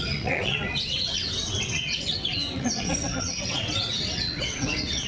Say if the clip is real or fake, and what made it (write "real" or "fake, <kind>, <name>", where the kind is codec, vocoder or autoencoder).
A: fake, vocoder, WaveNeXt